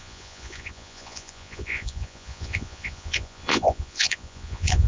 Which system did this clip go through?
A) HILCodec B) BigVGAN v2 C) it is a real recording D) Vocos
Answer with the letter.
D